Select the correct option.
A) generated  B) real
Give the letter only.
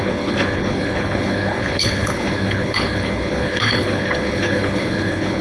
A